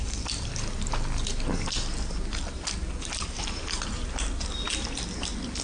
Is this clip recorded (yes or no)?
yes